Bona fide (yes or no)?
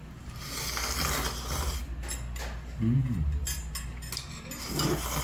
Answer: yes